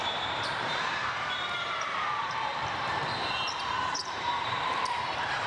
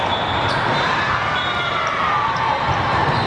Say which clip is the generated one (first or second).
first